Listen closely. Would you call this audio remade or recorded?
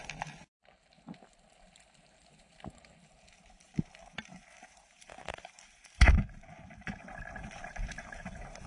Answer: remade